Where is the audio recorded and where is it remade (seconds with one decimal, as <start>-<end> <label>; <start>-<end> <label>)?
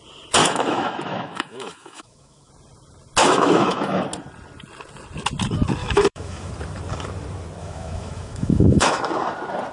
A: 0.0-0.4 recorded; 0.4-2.5 remade; 2.5-3.2 recorded; 3.2-4.0 remade; 4.0-5.8 recorded; 5.8-6.5 remade; 6.5-7.6 recorded; 7.6-9.1 remade; 9.1-9.7 recorded